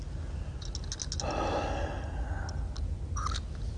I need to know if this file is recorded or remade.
recorded